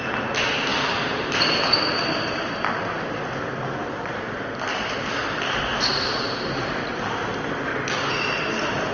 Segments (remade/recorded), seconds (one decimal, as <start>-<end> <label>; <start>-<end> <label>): 0.0-0.7 recorded; 0.7-1.8 remade; 1.8-3.8 recorded; 3.8-4.3 remade; 4.3-5.7 recorded; 5.7-6.9 remade; 6.9-8.9 recorded